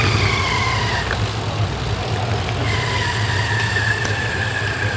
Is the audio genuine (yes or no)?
yes